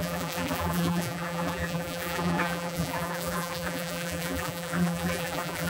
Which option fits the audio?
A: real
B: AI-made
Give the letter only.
B